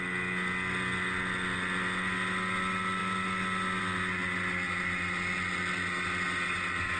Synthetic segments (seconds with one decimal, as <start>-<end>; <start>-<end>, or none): none